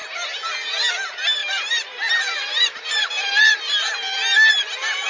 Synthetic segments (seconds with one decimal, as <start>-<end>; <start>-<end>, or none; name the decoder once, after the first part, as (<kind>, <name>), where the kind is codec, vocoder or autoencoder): 1.4-3.6 (vocoder, BigVGAN v2)